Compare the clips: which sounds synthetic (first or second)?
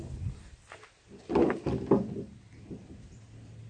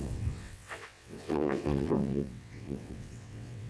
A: second